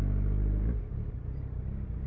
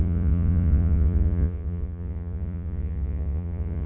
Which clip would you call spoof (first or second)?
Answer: second